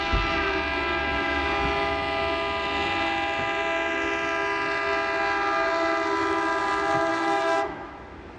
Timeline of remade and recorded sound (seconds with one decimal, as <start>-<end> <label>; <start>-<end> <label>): 0.0-7.1 recorded; 7.1-7.9 remade; 7.9-8.4 recorded